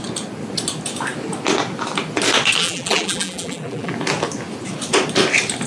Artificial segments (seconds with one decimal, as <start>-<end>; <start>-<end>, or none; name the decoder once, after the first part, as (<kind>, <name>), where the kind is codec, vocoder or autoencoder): 2.6-3.9 (vocoder, BigVGAN v2)